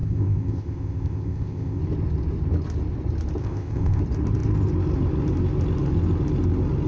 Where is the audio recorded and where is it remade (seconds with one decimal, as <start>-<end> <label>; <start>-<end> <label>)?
0.0-1.8 remade; 1.8-3.4 recorded; 3.4-4.0 remade; 4.0-6.9 recorded